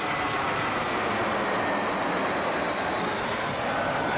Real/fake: real